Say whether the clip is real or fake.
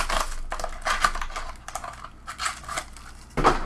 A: real